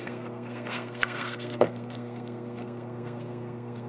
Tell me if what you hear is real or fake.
fake